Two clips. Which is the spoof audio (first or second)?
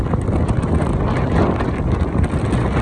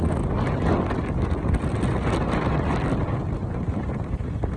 first